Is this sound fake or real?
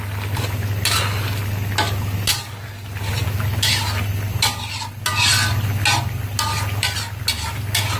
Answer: real